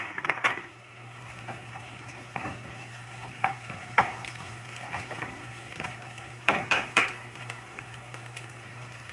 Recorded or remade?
remade